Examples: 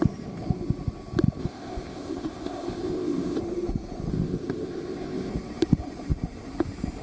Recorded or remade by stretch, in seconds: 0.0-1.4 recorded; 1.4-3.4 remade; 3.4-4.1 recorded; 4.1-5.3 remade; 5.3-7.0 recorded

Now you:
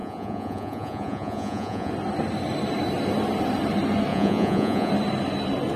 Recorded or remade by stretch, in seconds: 0.0-1.9 remade; 1.9-4.1 recorded; 4.1-4.9 remade; 4.9-5.8 recorded

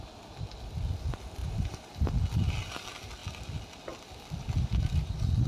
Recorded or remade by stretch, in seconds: 0.0-1.4 recorded; 1.4-2.1 remade; 2.1-5.5 recorded

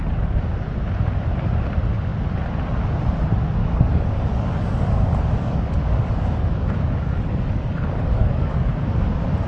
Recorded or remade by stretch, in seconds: 0.0-3.6 recorded; 3.6-8.7 remade; 8.7-9.5 recorded

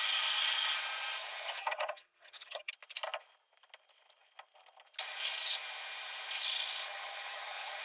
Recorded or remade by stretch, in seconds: 0.0-1.2 recorded; 1.2-2.7 remade; 2.7-6.8 recorded; 6.8-7.8 remade

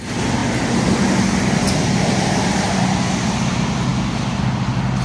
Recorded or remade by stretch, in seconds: 0.0-5.0 recorded

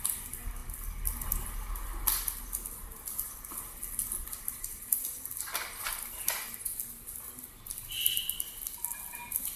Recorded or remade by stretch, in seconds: 0.0-9.6 recorded

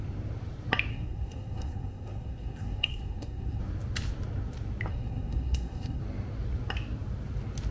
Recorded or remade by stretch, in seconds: 0.0-0.9 recorded; 0.9-3.6 remade; 3.6-4.9 recorded; 4.9-6.0 remade; 6.0-7.7 recorded